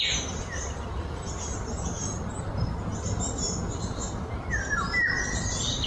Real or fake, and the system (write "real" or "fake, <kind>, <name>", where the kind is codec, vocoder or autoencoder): real